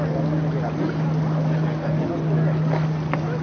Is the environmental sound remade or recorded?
recorded